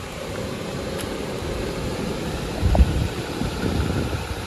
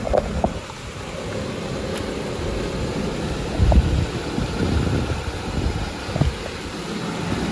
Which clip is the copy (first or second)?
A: first